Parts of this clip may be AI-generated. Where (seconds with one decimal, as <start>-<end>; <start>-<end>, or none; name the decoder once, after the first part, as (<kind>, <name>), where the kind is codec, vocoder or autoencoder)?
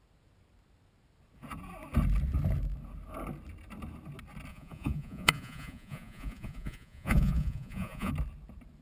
4.5-8.1 (vocoder, Vocos)